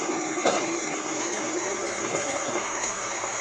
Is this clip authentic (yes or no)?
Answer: no